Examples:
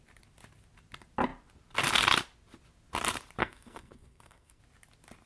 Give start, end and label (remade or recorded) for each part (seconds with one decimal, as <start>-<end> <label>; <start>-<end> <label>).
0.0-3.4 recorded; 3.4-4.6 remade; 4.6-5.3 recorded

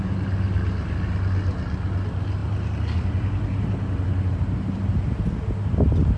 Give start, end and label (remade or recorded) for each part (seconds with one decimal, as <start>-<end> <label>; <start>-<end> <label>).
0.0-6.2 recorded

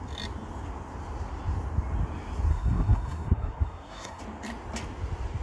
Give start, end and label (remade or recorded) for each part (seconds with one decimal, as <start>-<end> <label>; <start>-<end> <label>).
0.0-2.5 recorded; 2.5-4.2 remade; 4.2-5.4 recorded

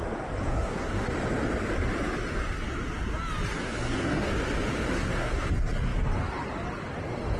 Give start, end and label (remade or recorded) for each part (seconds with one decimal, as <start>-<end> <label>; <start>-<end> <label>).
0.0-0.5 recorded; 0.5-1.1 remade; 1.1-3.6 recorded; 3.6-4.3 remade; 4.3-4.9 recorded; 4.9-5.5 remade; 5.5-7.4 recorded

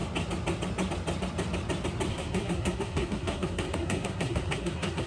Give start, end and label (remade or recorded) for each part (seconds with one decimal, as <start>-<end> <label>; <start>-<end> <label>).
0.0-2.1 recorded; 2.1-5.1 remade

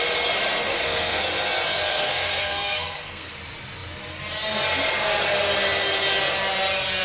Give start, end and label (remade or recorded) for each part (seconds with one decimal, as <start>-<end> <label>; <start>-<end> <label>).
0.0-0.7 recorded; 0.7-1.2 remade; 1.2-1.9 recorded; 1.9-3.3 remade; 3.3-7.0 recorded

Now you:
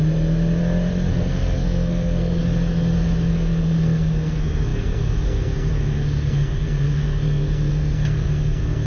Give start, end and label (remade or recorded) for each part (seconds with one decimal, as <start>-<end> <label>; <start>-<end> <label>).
0.0-1.1 recorded; 1.1-2.4 remade; 2.4-3.3 recorded; 3.3-8.9 remade

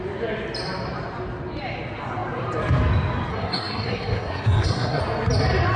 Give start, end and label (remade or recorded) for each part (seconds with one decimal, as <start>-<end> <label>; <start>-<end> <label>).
0.0-3.3 recorded; 3.3-5.0 remade; 5.0-5.8 recorded